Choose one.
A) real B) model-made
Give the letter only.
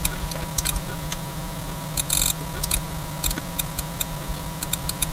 A